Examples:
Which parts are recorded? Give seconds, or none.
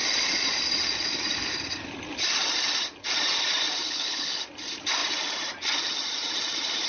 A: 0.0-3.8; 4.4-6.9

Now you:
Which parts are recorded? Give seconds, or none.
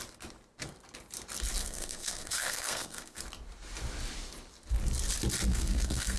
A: 0.0-1.6; 3.2-5.5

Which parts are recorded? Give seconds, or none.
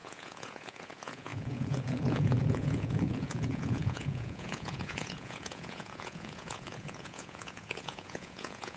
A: none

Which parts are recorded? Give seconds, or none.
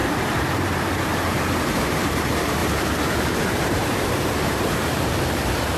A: 2.6-3.4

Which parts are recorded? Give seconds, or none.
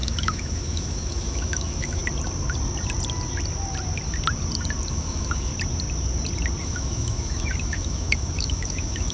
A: 2.0-4.9; 5.5-6.6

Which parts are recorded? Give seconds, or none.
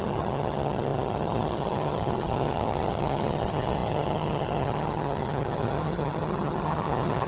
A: none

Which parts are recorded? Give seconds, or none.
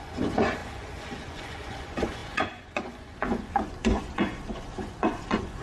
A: none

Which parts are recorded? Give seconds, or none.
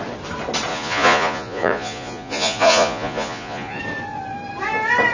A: 0.0-0.7; 3.8-5.1